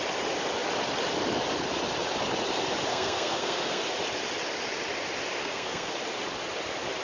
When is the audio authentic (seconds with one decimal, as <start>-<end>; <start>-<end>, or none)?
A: 0.0-2.9; 3.8-5.4; 5.9-7.0